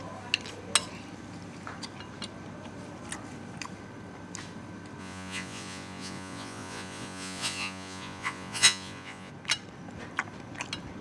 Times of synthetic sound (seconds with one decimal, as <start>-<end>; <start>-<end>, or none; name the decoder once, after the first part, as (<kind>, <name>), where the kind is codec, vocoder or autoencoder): 5.0-9.3 (vocoder, Vocos)